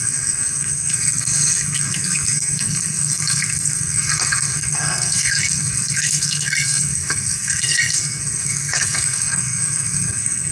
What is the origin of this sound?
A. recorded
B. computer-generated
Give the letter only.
B